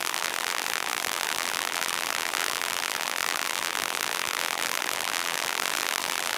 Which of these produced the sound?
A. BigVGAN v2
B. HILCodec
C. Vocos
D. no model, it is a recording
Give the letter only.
A